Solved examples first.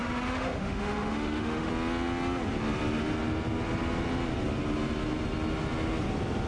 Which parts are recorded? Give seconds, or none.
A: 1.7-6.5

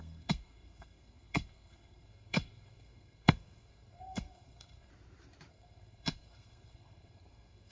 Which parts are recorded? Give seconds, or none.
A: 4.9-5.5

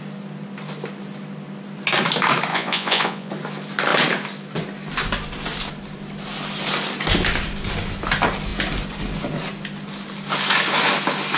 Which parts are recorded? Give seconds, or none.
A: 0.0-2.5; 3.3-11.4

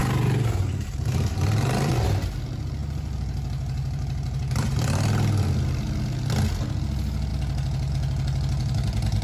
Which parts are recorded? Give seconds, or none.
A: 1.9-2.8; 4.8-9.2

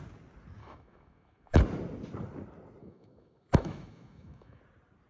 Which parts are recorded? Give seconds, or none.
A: 0.0-0.6; 1.6-2.8; 4.6-5.1